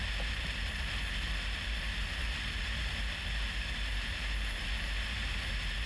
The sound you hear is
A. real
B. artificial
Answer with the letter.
A